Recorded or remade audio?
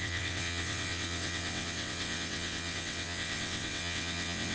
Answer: remade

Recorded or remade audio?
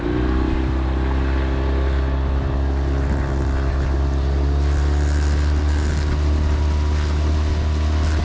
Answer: recorded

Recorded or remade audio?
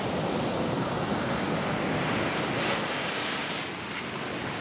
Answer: recorded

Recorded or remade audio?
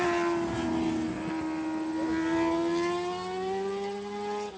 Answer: recorded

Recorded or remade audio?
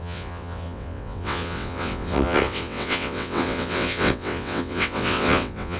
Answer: remade